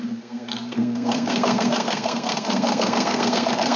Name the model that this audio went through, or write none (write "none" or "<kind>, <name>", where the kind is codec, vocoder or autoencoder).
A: codec, SNAC